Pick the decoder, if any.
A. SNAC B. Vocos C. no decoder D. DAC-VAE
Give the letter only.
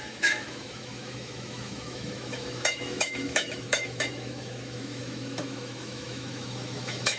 D